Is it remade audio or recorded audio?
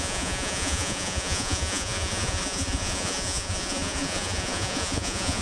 remade